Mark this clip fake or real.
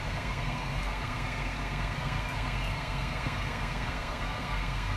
fake